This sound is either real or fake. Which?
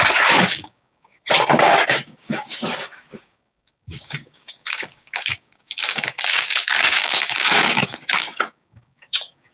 fake